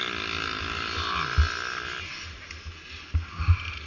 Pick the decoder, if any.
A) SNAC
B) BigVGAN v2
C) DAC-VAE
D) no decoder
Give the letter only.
D